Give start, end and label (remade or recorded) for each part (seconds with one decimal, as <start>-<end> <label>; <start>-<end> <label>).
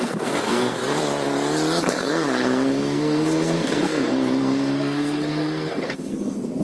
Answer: 0.0-0.8 remade; 0.8-1.8 recorded; 1.8-6.6 remade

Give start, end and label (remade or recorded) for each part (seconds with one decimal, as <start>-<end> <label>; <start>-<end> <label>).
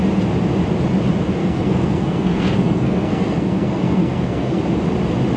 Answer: 0.0-1.4 recorded; 1.4-4.6 remade; 4.6-5.4 recorded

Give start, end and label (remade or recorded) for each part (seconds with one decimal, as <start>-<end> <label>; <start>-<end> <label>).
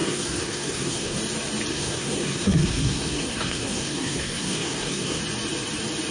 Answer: 0.0-1.2 remade; 1.2-1.7 recorded; 1.7-5.2 remade; 5.2-6.1 recorded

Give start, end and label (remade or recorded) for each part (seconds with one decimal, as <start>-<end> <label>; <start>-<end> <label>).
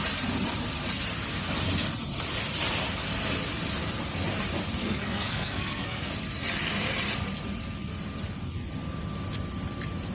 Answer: 0.0-4.8 recorded; 4.8-6.1 remade; 6.1-10.1 recorded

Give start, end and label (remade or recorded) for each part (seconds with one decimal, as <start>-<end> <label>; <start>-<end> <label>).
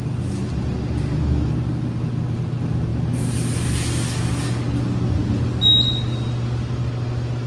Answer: 0.0-7.5 recorded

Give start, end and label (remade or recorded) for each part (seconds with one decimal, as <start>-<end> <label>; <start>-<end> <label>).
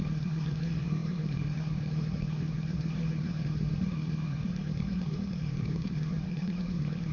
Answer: 0.0-7.1 remade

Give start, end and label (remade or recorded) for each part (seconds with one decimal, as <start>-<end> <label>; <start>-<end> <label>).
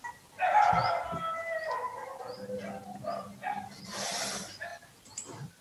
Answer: 0.0-5.6 recorded